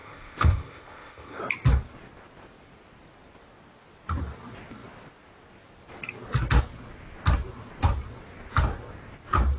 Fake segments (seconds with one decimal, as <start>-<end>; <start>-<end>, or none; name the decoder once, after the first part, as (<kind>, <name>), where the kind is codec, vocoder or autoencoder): 0.0-1.4 (codec, ZipCodec)